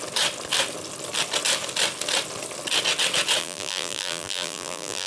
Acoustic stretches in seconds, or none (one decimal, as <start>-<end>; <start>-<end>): 0.0-3.4